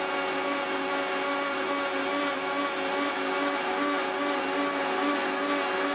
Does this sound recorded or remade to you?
recorded